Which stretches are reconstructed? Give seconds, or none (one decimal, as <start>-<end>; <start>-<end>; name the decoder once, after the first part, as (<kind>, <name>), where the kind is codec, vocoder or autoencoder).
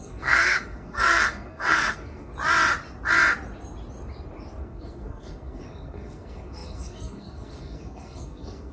0.0-2.3 (codec, SNAC); 4.6-8.7